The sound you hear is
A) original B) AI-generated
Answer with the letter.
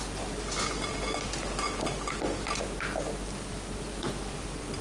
A